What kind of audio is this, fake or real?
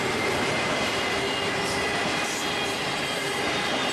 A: real